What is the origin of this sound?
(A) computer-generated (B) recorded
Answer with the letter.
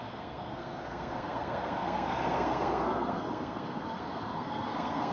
A